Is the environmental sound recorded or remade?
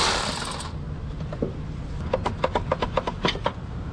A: recorded